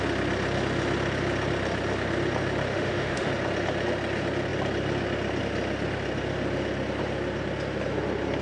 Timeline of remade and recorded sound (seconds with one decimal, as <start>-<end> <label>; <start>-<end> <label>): 0.0-2.7 recorded; 2.7-3.3 remade; 3.3-8.4 recorded